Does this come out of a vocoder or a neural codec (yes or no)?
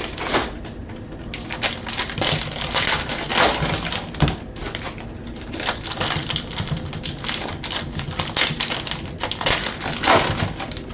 no